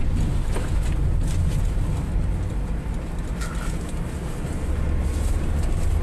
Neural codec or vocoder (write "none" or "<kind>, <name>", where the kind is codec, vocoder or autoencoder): none